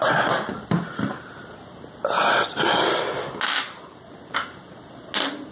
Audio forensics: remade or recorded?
recorded